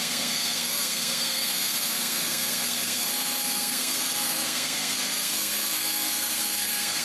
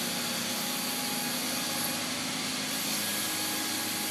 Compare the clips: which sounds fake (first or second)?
first